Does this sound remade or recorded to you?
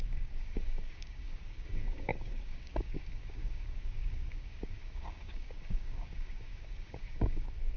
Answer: remade